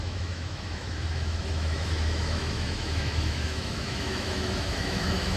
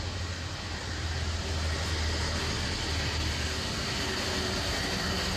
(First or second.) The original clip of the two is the second